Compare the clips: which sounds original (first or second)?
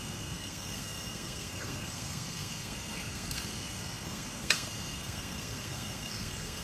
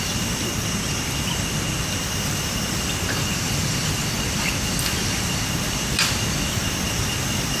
second